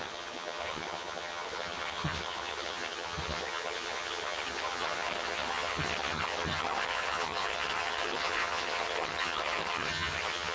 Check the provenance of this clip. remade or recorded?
remade